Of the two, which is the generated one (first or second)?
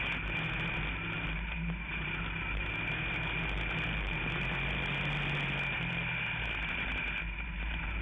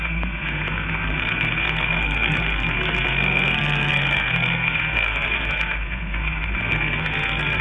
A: second